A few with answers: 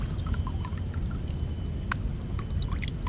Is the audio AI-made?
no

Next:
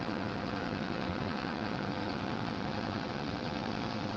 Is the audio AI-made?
yes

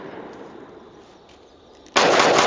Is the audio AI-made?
no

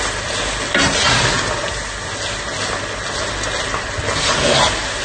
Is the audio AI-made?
no